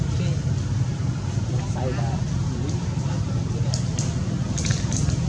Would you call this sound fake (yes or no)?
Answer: no